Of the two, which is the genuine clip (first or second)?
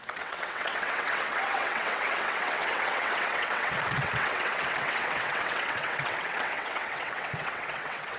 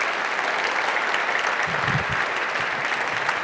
second